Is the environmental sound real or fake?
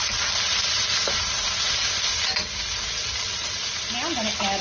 real